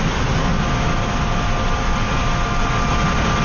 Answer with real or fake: real